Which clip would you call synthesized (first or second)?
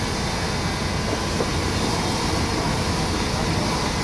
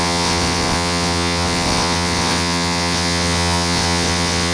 second